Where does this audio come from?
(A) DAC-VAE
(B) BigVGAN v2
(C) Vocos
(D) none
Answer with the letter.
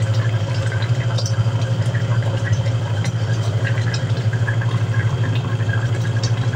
B